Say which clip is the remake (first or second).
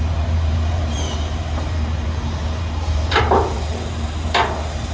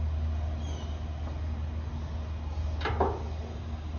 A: first